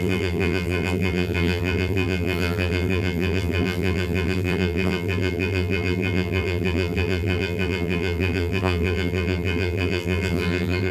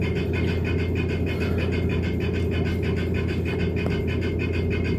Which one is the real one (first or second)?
second